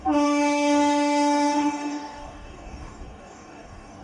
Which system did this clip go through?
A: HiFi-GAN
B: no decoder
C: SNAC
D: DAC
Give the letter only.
D